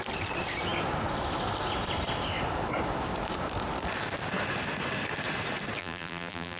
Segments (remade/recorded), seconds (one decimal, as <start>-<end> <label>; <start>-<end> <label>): 0.0-5.8 recorded; 5.8-6.6 remade